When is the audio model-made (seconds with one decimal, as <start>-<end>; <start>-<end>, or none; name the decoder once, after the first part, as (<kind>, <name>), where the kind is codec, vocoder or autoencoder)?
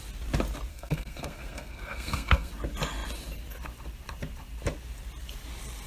0.7-2.5 (codec, SNAC)